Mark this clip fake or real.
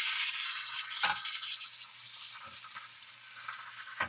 real